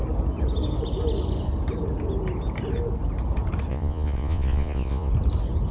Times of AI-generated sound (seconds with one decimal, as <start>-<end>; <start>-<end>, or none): 3.7-5.1